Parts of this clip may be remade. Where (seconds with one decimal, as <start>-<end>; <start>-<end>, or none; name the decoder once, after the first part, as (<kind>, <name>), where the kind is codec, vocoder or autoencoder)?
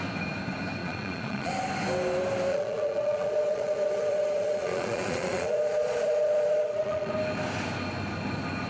0.8-1.5 (vocoder, Vocos); 2.5-7.1